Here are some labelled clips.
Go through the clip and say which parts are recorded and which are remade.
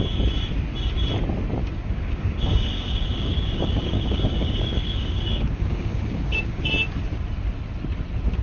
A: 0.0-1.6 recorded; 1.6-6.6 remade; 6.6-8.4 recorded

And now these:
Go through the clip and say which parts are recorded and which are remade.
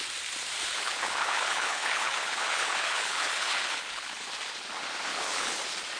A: 0.0-0.7 recorded; 0.7-4.3 remade; 4.3-5.1 recorded; 5.1-5.6 remade; 5.6-6.0 recorded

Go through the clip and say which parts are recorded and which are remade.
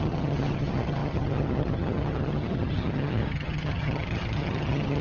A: 0.0-5.0 remade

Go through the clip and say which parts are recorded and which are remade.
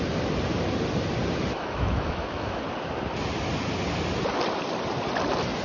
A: 0.0-1.5 recorded; 1.5-2.6 remade; 2.6-5.6 recorded